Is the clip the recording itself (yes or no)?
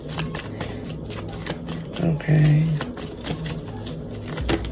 yes